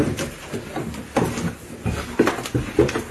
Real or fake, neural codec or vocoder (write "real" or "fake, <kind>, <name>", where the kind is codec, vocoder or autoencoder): real